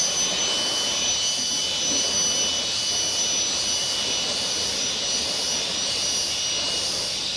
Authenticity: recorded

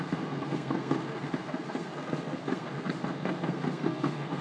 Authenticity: remade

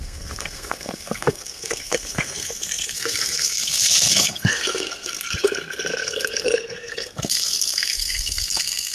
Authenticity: remade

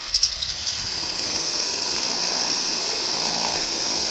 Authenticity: remade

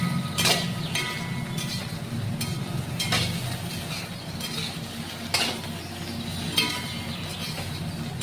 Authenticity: recorded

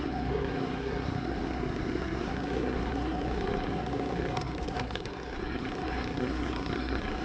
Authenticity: remade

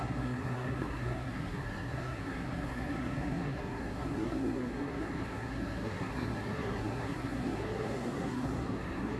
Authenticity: remade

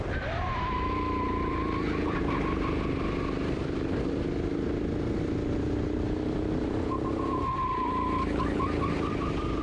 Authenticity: recorded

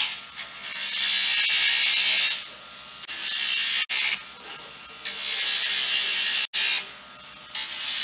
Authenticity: recorded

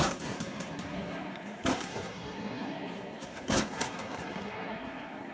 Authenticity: remade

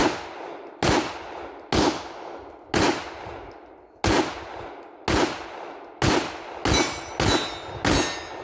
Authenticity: recorded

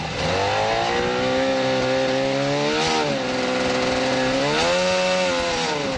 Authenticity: recorded